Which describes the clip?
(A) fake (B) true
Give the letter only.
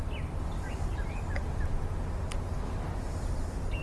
B